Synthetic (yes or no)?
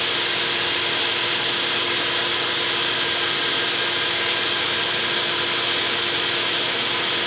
no